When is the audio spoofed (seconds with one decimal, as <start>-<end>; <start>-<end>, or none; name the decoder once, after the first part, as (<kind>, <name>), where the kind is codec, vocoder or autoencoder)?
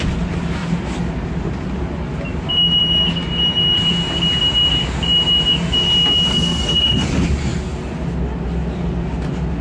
6.3-7.1 (codec, SNAC)